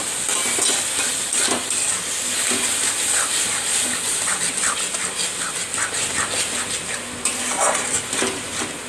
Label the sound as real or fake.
real